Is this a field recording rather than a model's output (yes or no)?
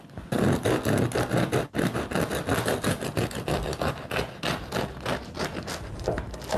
yes